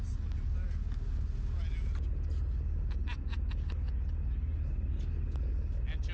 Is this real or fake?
real